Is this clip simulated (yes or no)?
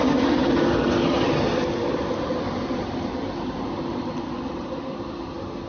no